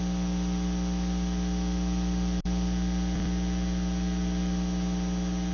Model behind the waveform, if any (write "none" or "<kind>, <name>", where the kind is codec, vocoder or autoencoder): none